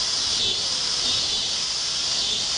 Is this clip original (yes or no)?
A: yes